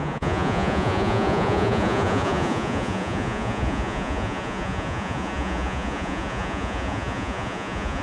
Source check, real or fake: fake